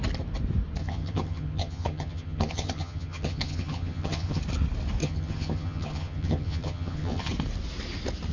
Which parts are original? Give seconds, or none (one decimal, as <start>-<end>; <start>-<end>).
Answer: 0.0-0.8; 4.4-5.0; 7.3-8.3